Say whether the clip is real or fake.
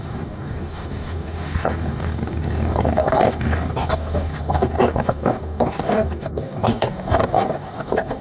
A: fake